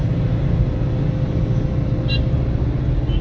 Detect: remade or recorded recorded